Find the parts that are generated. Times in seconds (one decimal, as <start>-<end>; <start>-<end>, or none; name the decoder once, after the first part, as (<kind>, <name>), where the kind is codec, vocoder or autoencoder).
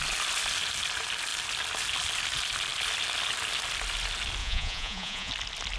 4.4-5.3 (vocoder, Vocos)